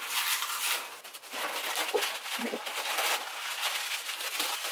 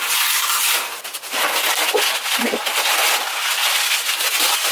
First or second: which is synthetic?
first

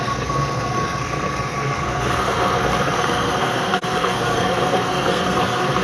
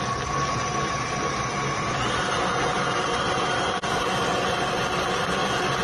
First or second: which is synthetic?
first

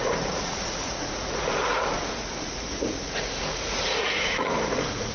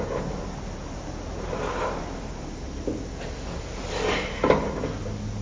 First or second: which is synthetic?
first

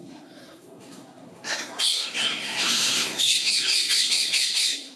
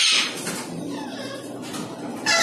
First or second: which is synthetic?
first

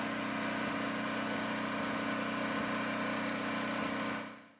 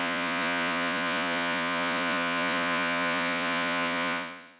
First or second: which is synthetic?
second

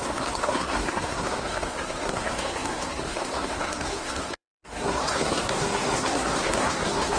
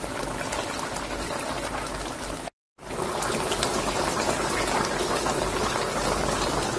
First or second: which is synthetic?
first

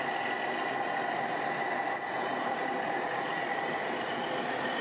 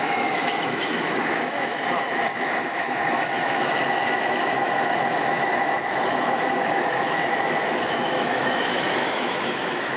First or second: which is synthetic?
second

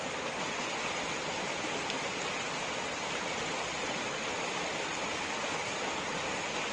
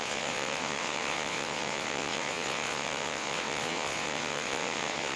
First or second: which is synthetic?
second